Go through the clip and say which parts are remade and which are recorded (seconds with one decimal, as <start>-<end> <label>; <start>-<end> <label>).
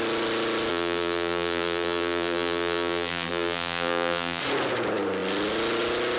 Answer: 0.0-0.7 recorded; 0.7-4.4 remade; 4.4-6.2 recorded